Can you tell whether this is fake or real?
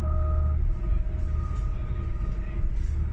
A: real